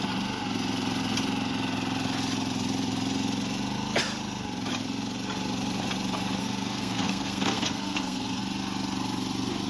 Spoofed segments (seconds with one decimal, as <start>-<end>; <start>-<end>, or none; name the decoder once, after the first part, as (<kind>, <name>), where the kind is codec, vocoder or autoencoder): 6.4-8.4 (codec, SNAC)